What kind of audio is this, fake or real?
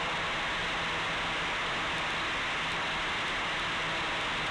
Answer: real